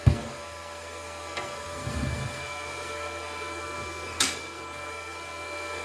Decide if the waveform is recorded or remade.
remade